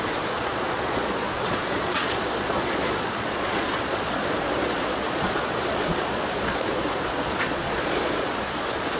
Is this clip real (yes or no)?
no